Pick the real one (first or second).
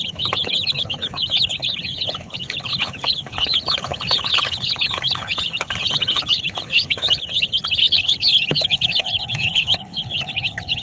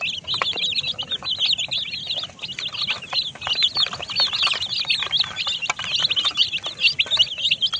second